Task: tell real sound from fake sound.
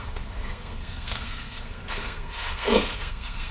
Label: fake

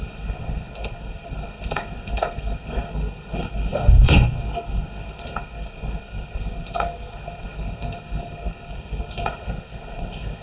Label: fake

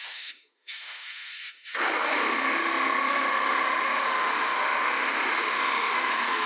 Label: fake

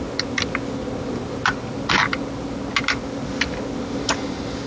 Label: real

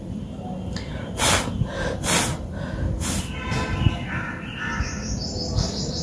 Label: real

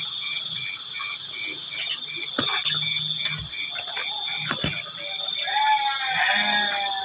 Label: real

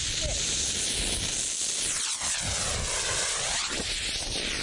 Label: real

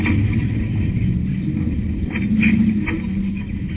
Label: real